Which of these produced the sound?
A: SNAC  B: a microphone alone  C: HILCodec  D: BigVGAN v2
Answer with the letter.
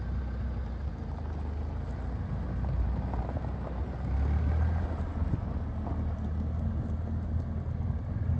B